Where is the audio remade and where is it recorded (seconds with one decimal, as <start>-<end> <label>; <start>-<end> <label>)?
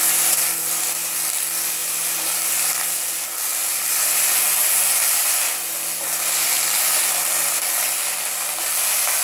0.0-1.8 recorded; 1.8-2.7 remade; 2.7-9.2 recorded